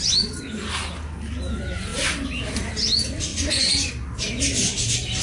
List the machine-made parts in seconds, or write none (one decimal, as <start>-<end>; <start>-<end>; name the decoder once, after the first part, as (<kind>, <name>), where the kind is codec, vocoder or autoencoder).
3.3-3.9 (vocoder, Vocos)